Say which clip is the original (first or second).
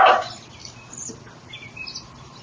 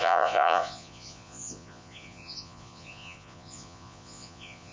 first